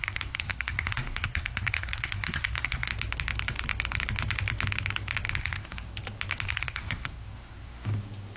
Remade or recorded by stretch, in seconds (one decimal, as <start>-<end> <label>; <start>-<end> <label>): 0.0-2.9 remade; 2.9-5.4 recorded; 5.4-5.9 remade; 5.9-6.5 recorded; 6.5-7.9 remade; 7.9-8.4 recorded